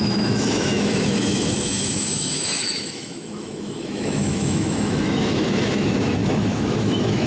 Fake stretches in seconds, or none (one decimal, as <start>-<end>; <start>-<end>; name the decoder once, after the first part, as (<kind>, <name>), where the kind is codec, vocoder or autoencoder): 0.0-7.3 (autoencoder, DAC-VAE)